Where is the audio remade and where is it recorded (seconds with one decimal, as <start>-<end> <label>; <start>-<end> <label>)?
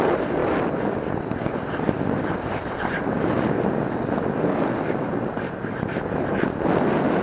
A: 0.0-7.2 recorded